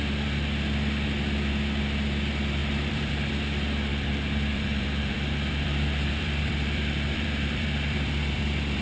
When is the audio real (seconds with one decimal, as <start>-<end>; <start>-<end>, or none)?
0.0-2.6; 3.3-3.9